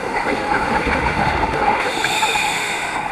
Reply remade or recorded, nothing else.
remade